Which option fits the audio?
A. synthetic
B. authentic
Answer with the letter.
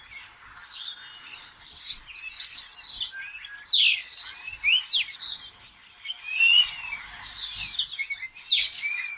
B